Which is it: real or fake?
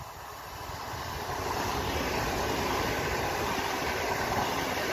real